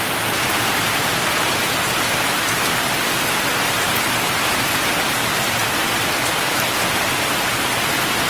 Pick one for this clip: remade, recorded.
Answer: recorded